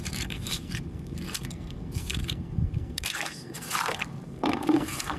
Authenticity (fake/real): fake